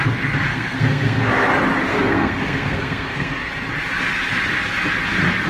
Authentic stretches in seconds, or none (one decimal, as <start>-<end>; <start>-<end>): 0.0-0.5; 1.3-1.9; 3.4-5.5

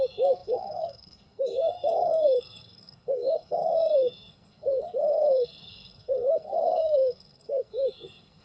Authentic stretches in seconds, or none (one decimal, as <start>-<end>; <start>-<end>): none

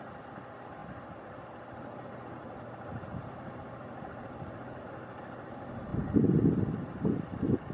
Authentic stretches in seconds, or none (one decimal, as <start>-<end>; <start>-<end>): 0.0-7.7

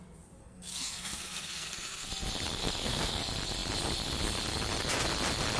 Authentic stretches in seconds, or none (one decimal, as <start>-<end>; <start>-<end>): 0.0-0.4; 2.1-2.6; 3.2-5.6

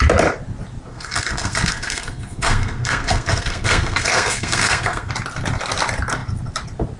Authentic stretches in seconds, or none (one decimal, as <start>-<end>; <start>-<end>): 0.0-0.9; 5.1-7.0

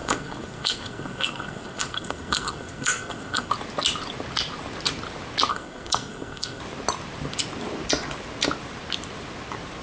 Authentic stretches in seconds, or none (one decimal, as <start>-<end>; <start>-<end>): 3.5-5.5; 6.6-9.8